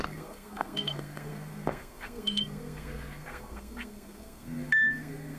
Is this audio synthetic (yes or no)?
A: yes